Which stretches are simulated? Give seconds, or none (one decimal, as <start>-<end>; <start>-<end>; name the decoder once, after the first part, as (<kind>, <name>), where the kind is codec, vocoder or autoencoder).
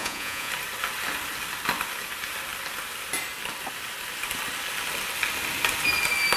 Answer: 0.0-0.5 (vocoder, Vocos)